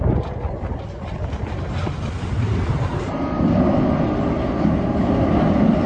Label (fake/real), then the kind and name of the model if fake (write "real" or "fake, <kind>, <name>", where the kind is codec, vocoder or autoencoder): real